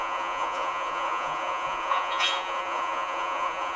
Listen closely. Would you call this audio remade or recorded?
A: remade